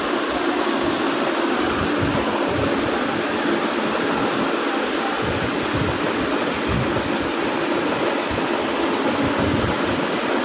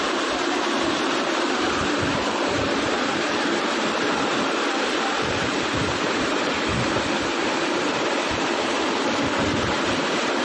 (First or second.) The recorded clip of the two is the first